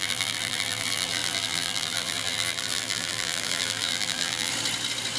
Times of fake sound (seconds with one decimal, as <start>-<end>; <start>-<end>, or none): 0.0-4.5